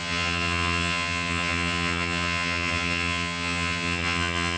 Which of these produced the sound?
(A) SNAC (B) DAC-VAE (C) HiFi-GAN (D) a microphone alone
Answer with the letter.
C